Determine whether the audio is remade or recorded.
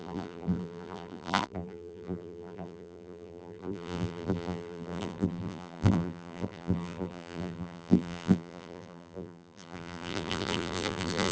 remade